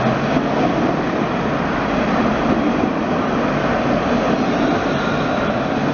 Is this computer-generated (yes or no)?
no